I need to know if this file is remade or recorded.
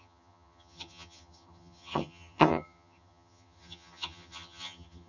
remade